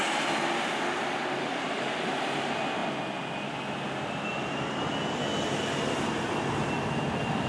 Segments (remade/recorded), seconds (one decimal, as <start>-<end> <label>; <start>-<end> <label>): 0.0-7.5 recorded